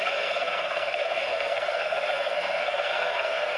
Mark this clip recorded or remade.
remade